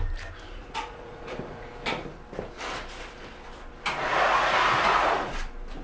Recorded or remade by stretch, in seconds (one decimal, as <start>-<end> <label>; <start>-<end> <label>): 0.0-0.6 recorded; 0.6-1.7 remade; 1.7-4.1 recorded; 4.1-5.3 remade; 5.3-5.8 recorded

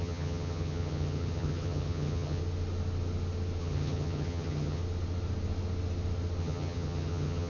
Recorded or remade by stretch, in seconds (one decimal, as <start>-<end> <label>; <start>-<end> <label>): 0.0-2.4 remade; 2.4-3.6 recorded; 3.6-4.8 remade; 4.8-6.4 recorded; 6.4-7.5 remade